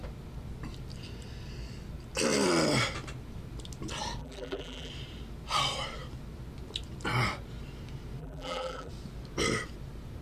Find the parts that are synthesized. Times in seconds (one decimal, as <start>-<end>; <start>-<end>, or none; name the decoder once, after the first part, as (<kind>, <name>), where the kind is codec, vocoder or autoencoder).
4.2-4.9 (vocoder, BigVGAN v2); 8.2-8.9